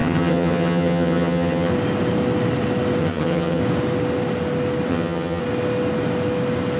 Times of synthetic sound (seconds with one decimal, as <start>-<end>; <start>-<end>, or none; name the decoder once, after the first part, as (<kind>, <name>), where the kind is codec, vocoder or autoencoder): 0.0-1.7 (vocoder, HiFi-GAN); 3.0-3.6; 4.9-5.4

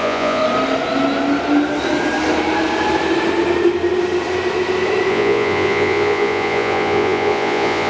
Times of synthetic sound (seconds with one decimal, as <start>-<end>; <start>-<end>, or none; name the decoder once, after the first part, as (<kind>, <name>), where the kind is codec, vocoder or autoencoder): 0.0-0.4 (vocoder, Vocos); 5.1-7.9

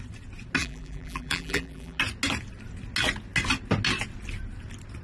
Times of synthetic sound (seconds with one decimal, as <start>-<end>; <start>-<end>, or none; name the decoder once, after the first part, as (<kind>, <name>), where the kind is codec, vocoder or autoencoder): 0.6-2.0 (vocoder, BigVGAN v2)

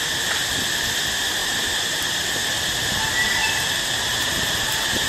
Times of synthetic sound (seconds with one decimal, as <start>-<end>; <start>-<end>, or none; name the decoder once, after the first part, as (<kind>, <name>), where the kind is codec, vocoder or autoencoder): 1.4-2.1 (vocoder, BigVGAN v2); 3.4-5.1

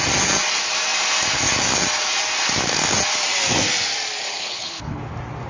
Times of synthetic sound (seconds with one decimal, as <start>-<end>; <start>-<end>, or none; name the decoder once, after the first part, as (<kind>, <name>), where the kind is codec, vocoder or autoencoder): 4.2-5.0 (codec, HILCodec)

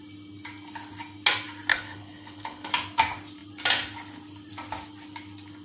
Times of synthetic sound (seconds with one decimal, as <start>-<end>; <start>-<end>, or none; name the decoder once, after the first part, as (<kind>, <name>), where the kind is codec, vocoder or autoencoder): 1.7-2.7 (codec, HILCodec)

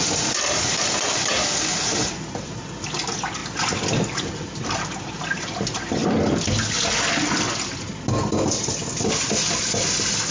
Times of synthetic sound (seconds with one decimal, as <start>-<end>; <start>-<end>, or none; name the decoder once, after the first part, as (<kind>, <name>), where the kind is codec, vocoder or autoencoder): none